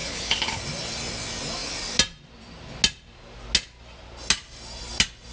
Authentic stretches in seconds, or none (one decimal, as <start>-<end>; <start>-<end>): 0.6-5.3